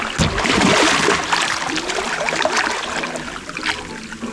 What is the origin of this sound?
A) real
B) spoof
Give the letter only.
A